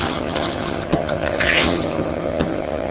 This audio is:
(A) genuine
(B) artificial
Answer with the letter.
B